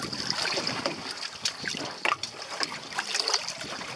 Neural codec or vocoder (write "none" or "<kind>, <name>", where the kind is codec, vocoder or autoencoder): none